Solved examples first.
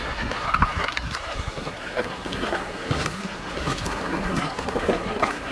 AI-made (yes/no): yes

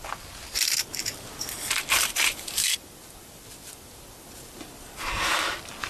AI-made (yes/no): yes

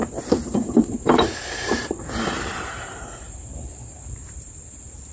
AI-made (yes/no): yes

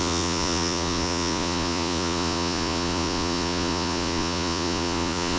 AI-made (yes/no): yes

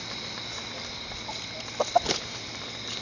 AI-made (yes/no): no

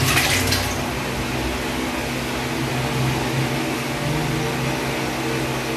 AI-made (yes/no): no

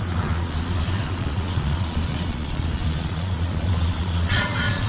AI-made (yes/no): yes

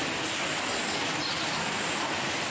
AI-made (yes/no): no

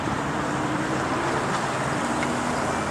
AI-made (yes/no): no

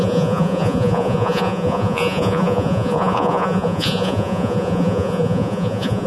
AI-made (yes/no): yes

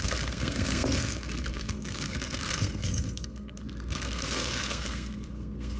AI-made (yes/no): yes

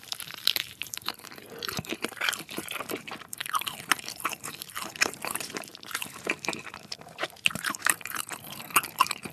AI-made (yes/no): yes